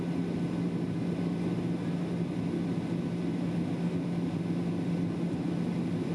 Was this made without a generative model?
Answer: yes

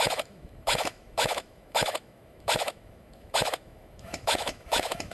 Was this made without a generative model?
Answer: no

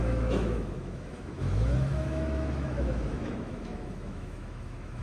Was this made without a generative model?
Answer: no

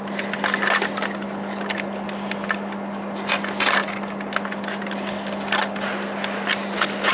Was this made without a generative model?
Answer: yes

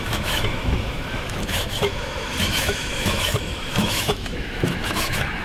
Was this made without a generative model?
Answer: no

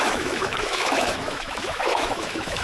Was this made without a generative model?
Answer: no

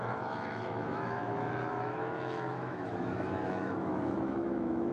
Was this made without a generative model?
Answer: no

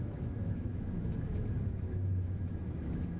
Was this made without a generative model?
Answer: no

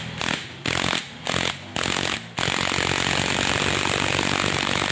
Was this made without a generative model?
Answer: yes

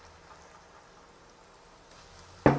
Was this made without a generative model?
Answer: yes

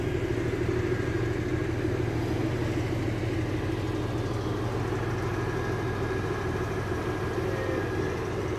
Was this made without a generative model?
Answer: yes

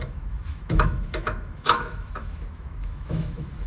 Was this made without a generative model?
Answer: no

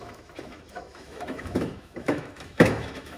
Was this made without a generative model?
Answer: no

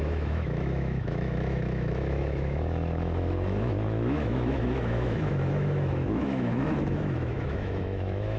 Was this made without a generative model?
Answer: no